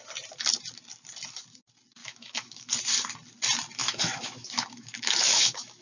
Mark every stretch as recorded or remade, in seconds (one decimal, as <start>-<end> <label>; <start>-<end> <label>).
0.0-2.0 recorded; 2.0-2.7 remade; 2.7-3.8 recorded; 3.8-5.8 remade